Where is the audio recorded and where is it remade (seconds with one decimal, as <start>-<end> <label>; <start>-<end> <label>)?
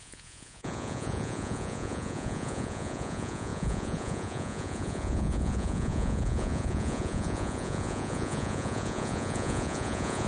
0.0-10.3 remade